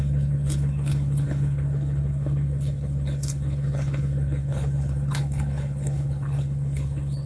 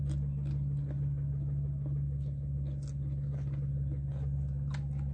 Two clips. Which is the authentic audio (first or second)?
second